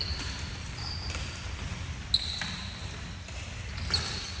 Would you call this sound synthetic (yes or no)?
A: no